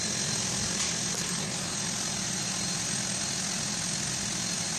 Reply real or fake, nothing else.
real